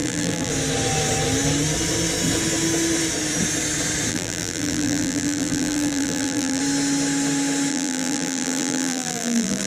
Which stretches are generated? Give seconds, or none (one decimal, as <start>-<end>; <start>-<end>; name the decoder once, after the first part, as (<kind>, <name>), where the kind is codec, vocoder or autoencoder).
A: 0.0-0.5 (vocoder, BigVGAN v2); 4.1-6.6; 7.7-9.7